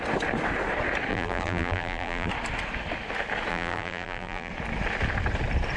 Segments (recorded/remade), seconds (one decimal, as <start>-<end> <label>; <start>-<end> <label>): 0.0-1.1 recorded; 1.1-2.3 remade; 2.3-3.5 recorded; 3.5-4.5 remade; 4.5-5.8 recorded